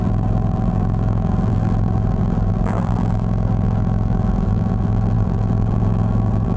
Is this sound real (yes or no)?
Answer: no